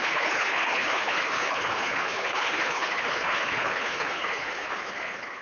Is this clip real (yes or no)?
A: no